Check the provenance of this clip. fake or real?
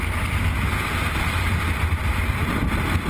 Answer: real